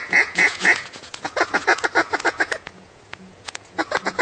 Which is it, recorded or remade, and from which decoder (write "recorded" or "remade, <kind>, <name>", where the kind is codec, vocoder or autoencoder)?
remade, vocoder, Vocos